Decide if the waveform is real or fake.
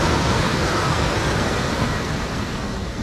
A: fake